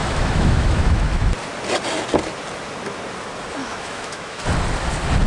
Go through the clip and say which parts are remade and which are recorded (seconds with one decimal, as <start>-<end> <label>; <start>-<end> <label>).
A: 0.0-1.3 remade; 1.3-3.6 recorded; 3.6-4.4 remade; 4.4-5.3 recorded